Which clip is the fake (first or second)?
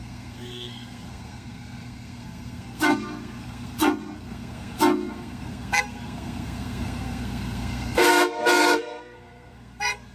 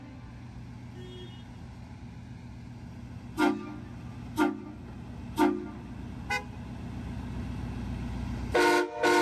first